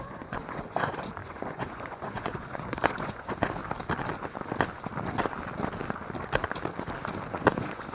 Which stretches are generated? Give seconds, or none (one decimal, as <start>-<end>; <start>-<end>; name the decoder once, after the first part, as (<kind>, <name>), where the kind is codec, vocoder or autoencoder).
0.0-3.6 (vocoder, Vocos); 7.3-7.9

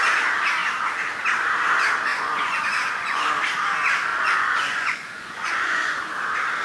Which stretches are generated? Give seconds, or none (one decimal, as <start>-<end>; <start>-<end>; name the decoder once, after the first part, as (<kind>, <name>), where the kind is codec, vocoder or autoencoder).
2.1-3.3 (vocoder, Vocos); 4.1-6.1

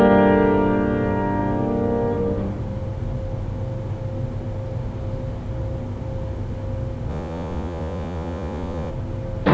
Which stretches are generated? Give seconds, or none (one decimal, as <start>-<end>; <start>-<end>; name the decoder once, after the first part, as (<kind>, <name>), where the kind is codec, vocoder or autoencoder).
7.1-8.9 (vocoder, Vocos)

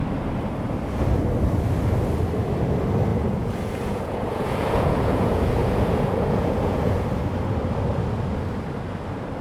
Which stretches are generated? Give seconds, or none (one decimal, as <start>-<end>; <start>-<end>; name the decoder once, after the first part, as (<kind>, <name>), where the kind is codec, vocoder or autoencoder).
3.1-7.0 (vocoder, Vocos)

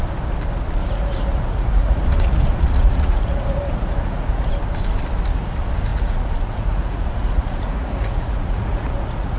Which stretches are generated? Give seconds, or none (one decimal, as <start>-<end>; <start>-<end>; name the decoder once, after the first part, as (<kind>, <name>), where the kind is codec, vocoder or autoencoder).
0.8-4.5 (vocoder, Vocos); 5.9-9.4

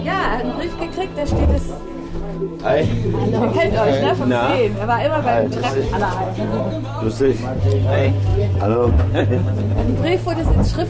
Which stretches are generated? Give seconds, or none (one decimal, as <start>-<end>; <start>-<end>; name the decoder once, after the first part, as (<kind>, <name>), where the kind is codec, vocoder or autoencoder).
8.3-9.2 (vocoder, Vocos)

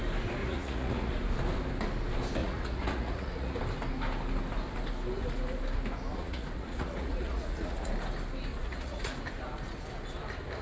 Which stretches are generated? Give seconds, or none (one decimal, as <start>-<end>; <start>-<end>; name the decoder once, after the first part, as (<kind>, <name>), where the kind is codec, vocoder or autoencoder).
0.4-1.1 (vocoder, Vocos); 2.4-3.6; 6.1-7.9; 8.5-9.1

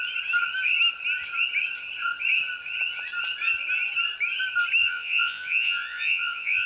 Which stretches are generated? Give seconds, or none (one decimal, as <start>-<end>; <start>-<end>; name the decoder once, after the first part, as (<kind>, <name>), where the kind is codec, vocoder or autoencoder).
4.8-6.7 (vocoder, Vocos)